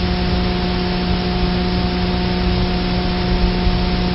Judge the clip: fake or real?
real